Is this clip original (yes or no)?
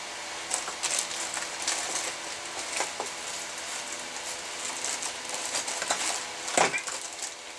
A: yes